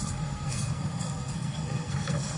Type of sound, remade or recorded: remade